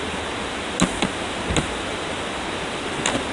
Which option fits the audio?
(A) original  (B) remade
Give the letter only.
A